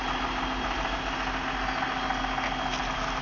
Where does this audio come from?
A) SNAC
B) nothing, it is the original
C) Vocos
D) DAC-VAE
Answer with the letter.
B